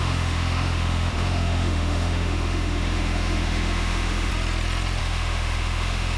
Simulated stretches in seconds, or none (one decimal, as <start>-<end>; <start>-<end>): 0.0-4.3; 5.0-6.2